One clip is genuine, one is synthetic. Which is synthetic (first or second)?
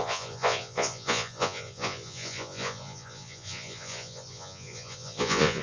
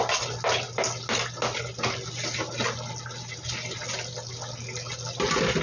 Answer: first